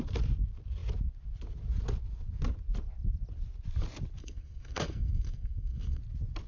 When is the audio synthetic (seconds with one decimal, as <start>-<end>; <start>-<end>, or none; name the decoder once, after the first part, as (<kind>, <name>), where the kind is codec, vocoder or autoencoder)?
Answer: 4.2-6.0 (codec, SNAC)